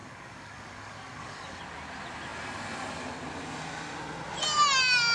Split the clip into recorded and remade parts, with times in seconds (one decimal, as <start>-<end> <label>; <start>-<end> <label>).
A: 0.0-1.6 remade; 1.6-5.1 recorded

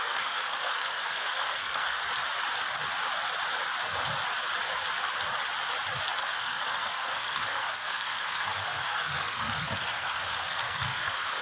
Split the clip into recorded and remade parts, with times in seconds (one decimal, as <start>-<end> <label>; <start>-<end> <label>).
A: 0.0-2.0 remade; 2.0-6.2 recorded; 6.2-11.4 remade

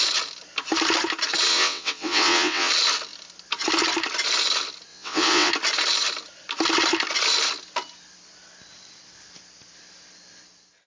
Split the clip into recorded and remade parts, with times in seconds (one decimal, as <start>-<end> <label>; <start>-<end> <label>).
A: 0.0-1.5 recorded; 1.5-2.7 remade; 2.7-4.9 recorded; 4.9-5.5 remade; 5.5-10.9 recorded

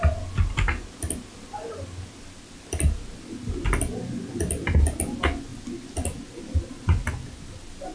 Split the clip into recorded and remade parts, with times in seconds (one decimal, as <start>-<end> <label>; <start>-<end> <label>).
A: 0.0-7.9 recorded

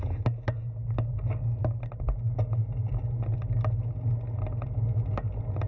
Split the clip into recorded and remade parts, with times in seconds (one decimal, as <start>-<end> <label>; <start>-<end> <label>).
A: 0.0-5.7 recorded

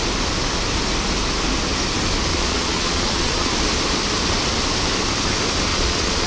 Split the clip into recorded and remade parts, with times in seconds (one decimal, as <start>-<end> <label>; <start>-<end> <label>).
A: 0.0-2.3 recorded; 2.3-3.5 remade; 3.5-5.7 recorded; 5.7-6.3 remade

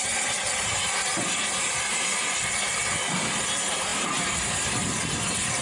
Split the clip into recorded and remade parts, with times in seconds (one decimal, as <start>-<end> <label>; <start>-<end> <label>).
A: 0.0-5.6 recorded

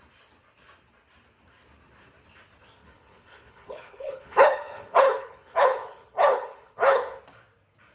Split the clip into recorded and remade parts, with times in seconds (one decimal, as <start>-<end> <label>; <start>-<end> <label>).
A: 0.0-2.8 recorded; 2.8-7.2 remade; 7.2-7.9 recorded